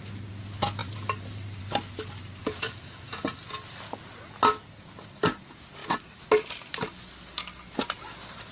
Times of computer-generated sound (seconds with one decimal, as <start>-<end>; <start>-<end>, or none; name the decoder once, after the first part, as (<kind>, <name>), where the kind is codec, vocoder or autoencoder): 0.8-1.6 (vocoder, BigVGAN v2); 2.4-3.3